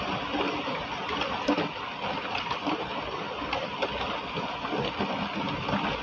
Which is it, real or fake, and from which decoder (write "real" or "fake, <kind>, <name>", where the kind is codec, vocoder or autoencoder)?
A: real